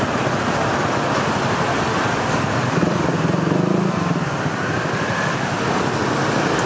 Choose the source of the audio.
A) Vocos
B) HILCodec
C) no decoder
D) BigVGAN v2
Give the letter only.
C